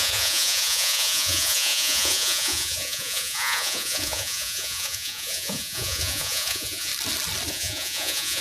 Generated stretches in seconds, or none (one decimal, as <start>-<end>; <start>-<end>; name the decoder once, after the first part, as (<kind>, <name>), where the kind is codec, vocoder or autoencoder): 0.0-6.9 (vocoder, Vocos); 7.5-8.4